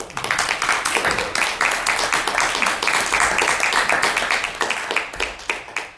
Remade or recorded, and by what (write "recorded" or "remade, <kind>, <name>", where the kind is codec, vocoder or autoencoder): recorded